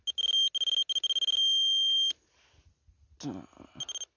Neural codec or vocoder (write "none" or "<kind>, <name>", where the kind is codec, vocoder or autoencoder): none